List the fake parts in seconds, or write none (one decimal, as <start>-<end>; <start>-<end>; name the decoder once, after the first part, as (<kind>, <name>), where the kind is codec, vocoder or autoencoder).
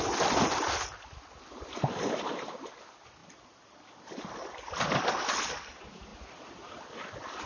none